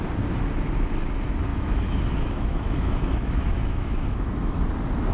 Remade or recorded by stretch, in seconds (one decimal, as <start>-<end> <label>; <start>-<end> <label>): 0.0-1.5 recorded; 1.5-4.6 remade; 4.6-5.1 recorded